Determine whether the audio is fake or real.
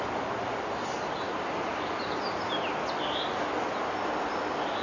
real